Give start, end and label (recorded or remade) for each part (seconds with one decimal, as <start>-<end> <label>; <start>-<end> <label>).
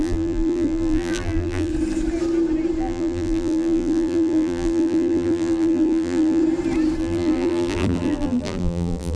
0.0-1.7 remade; 1.7-2.8 recorded; 2.8-6.4 remade; 6.4-7.0 recorded; 7.0-9.2 remade